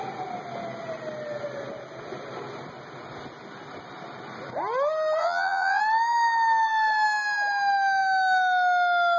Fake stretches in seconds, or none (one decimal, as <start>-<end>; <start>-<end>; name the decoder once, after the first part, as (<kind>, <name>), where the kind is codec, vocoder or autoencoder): 5.2-5.8 (vocoder, Vocos)